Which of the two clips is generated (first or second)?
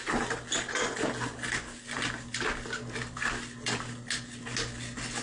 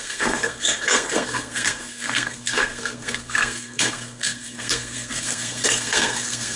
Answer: second